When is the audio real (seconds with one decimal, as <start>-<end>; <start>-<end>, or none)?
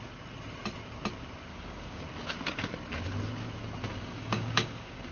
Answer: 0.0-1.5; 2.0-3.9